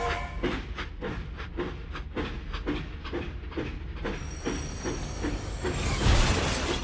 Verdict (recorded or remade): recorded